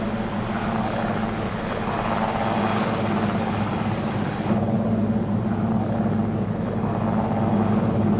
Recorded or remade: recorded